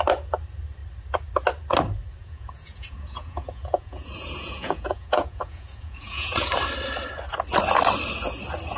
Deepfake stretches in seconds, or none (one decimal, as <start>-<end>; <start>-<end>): 2.2-6.5